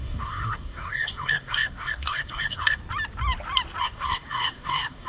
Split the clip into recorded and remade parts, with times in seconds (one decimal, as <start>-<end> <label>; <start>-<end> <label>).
0.0-2.8 remade; 2.8-3.8 recorded; 3.8-5.1 remade